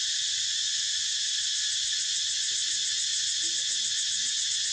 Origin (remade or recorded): remade